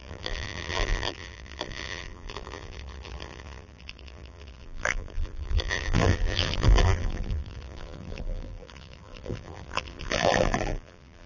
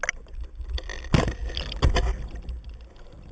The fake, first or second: first